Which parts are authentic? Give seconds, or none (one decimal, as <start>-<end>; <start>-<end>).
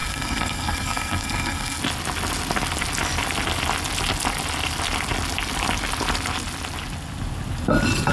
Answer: 1.8-8.1